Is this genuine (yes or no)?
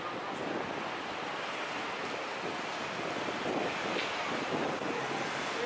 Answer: yes